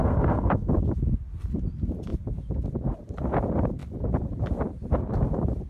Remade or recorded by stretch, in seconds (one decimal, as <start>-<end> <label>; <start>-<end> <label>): 0.0-0.7 remade; 0.7-5.7 recorded